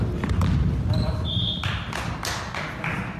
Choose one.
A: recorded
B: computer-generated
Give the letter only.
A